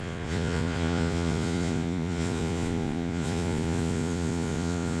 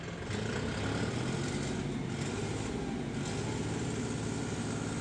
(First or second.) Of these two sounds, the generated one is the first